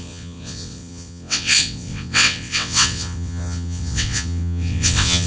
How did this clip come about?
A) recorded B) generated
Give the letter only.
B